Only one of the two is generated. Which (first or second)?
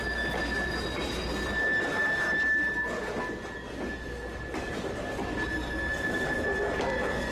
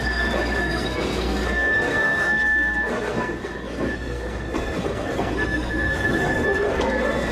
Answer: second